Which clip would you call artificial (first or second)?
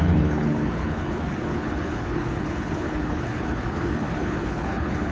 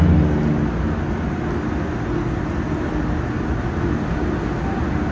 first